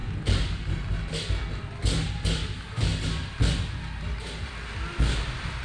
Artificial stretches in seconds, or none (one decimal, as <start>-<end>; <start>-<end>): none